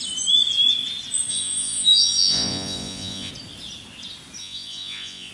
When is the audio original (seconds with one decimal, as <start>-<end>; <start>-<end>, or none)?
0.0-1.3; 3.3-4.4